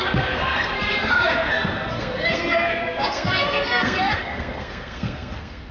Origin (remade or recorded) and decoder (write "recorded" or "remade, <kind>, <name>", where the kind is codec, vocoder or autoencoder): remade, codec, SNAC